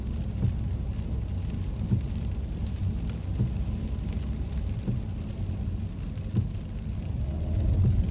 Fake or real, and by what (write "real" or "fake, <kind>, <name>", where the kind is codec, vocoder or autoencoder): real